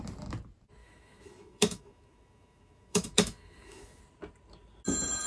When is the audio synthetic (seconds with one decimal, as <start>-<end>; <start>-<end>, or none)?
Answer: 0.8-4.0